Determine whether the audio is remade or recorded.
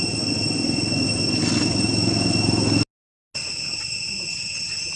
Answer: recorded